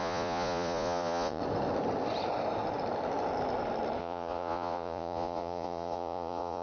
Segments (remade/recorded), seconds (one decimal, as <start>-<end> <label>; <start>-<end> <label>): 0.0-1.4 remade; 1.4-4.0 recorded; 4.0-6.6 remade